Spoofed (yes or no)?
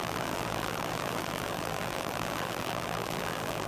yes